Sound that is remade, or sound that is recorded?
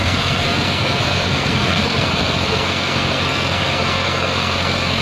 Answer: remade